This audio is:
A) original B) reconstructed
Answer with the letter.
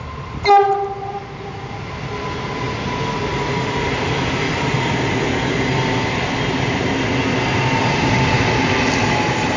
A